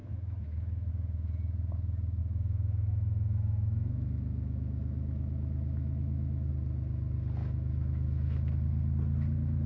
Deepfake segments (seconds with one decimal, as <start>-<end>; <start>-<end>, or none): 0.0-0.9; 2.2-6.5; 7.4-8.5